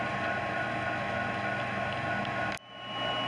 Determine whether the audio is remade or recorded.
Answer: recorded